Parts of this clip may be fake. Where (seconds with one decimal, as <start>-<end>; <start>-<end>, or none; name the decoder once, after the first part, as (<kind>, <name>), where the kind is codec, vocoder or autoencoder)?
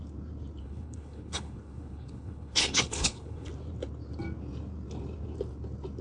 0.6-3.5 (codec, HILCodec)